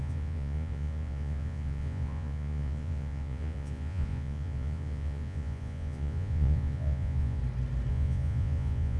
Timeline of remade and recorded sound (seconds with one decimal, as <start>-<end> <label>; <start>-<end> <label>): 0.0-7.4 remade; 7.4-7.9 recorded; 7.9-9.0 remade